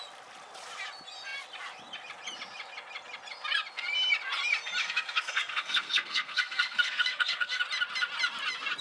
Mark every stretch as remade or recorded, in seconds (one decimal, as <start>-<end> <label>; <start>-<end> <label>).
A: 0.0-4.8 recorded; 4.8-7.6 remade; 7.6-8.8 recorded

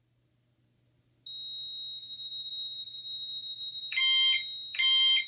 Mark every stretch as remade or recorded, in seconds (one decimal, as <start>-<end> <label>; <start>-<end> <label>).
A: 0.0-2.0 recorded; 2.0-4.0 remade; 4.0-5.3 recorded

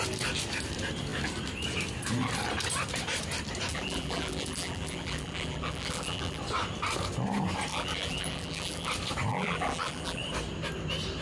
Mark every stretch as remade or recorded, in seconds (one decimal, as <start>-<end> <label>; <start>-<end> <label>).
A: 0.0-3.7 recorded; 3.7-6.4 remade; 6.4-7.7 recorded; 7.7-8.9 remade; 8.9-9.3 recorded; 9.3-10.2 remade; 10.2-11.2 recorded

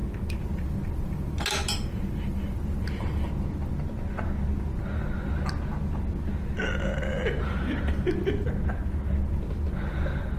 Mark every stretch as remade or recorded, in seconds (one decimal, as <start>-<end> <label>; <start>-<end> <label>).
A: 0.0-10.4 recorded